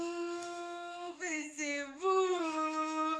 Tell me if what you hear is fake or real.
fake